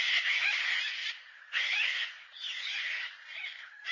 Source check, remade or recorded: recorded